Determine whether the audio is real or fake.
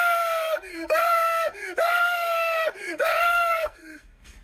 fake